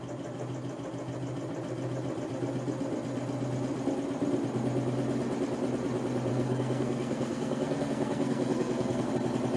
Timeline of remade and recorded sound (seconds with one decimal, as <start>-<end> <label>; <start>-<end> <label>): 0.0-6.3 recorded; 6.3-9.1 remade; 9.1-9.6 recorded